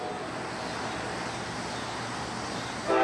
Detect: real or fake real